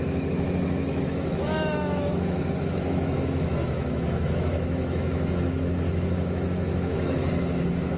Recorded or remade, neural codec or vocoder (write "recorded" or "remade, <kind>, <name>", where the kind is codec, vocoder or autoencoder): remade, autoencoder, DAC-VAE